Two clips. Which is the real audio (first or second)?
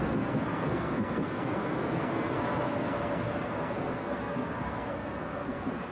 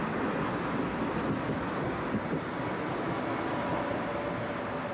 second